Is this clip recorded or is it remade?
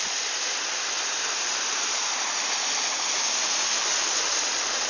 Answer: recorded